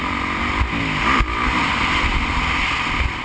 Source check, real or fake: real